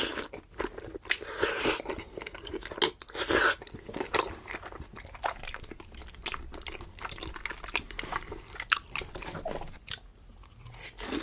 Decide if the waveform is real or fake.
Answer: real